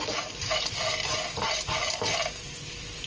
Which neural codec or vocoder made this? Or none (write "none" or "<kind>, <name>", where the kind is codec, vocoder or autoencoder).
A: none